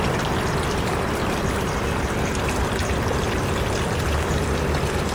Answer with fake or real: fake